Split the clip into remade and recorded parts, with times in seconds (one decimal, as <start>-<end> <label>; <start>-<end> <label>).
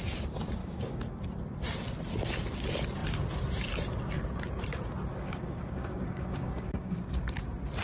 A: 0.0-0.6 recorded; 0.6-1.2 remade; 1.2-5.1 recorded; 5.1-7.1 remade; 7.1-7.8 recorded